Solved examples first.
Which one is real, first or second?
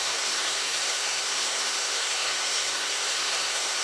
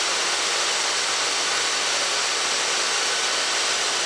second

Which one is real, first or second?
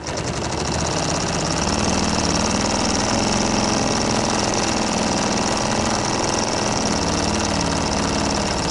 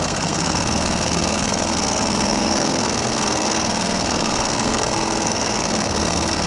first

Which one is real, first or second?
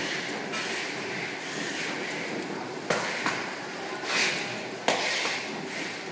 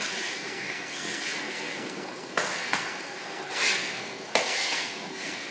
first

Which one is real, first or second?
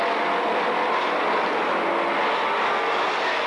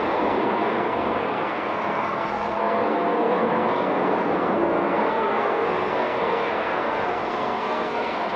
first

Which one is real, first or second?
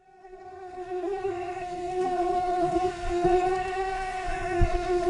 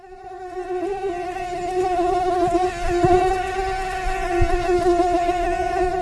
second